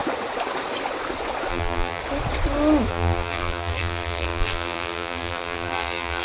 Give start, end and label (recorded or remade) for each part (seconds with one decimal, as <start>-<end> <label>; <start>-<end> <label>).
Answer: 0.0-1.5 recorded; 1.5-2.0 remade; 2.0-2.9 recorded; 2.9-6.2 remade